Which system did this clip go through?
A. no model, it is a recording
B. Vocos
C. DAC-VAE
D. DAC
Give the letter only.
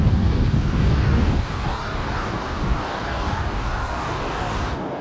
D